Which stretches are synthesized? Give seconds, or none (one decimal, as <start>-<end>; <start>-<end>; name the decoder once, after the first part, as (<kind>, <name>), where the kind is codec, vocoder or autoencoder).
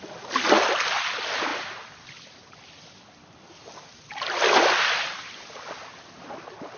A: 1.5-5.6 (vocoder, BigVGAN v2)